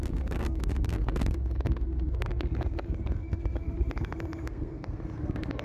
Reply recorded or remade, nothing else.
remade